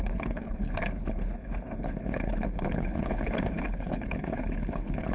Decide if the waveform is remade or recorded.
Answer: remade